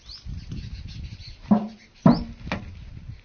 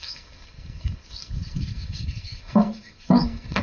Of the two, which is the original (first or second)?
first